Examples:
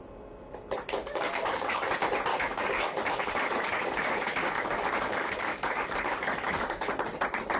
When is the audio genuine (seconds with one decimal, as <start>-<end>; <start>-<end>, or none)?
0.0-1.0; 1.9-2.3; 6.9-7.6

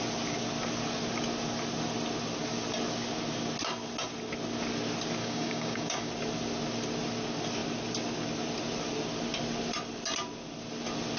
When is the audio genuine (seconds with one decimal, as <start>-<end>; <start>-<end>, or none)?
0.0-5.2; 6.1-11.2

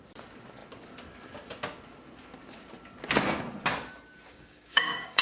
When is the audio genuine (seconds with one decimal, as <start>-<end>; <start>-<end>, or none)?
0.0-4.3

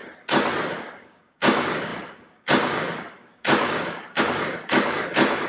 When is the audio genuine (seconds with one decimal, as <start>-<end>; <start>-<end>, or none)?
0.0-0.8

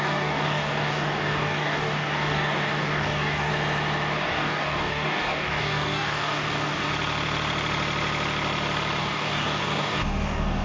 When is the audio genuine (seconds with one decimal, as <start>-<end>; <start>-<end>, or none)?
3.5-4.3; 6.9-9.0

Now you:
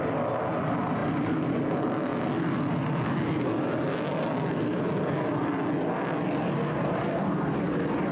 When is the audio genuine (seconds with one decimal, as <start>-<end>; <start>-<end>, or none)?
0.0-8.1